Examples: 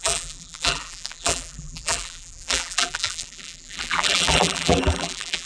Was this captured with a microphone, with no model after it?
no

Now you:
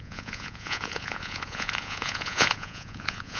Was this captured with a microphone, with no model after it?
no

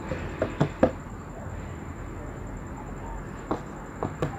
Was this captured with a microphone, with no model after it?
yes